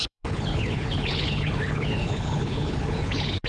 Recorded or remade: remade